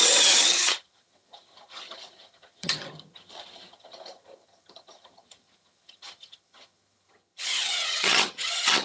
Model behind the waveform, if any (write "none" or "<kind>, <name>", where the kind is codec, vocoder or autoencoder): vocoder, HiFi-GAN